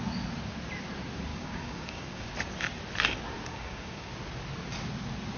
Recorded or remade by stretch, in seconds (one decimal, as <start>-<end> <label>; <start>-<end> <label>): 0.0-1.3 recorded; 1.3-2.3 remade; 2.3-3.5 recorded; 3.5-4.1 remade; 4.1-5.4 recorded